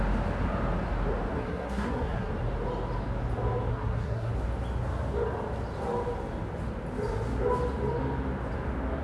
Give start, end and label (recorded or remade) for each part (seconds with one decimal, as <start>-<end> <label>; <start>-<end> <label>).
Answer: 0.0-1.3 recorded; 1.3-2.3 remade; 2.3-3.7 recorded; 3.7-4.3 remade; 4.3-9.0 recorded